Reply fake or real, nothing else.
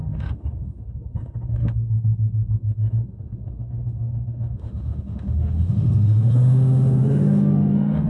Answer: fake